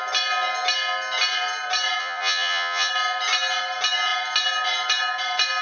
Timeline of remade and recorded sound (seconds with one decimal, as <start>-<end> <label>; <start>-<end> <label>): 0.0-2.0 recorded; 2.0-2.9 remade; 2.9-5.6 recorded

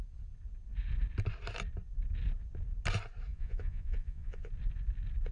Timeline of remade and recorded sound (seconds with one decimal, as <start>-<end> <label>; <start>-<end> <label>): 0.0-3.3 recorded; 3.3-4.5 remade; 4.5-5.3 recorded

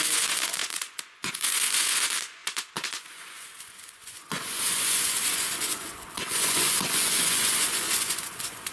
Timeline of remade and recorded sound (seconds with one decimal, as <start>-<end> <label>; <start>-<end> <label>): 0.0-8.7 remade

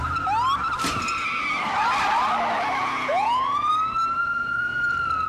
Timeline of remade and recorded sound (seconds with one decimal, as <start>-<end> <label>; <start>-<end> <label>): 0.0-2.8 recorded; 2.8-3.7 remade; 3.7-4.2 recorded; 4.2-4.8 remade; 4.8-5.3 recorded

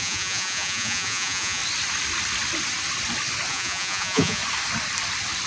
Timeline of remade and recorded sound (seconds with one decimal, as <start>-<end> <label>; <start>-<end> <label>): 0.0-1.6 remade; 1.6-3.5 recorded; 3.5-4.4 remade; 4.4-5.5 recorded